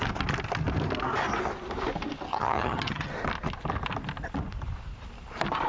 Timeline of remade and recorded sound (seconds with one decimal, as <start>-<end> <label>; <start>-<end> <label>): 0.0-2.3 recorded; 2.3-3.1 remade; 3.1-5.7 recorded